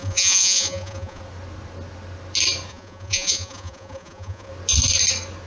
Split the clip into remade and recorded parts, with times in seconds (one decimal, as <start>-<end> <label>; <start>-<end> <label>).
0.0-1.2 remade; 1.2-2.7 recorded; 2.7-4.5 remade; 4.5-5.5 recorded